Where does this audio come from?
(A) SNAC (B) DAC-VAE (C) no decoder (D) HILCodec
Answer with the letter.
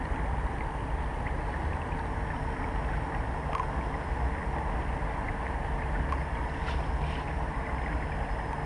C